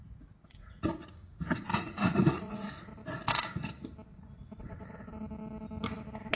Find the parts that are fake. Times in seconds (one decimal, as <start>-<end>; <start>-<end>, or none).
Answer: 0.0-3.0; 4.4-5.1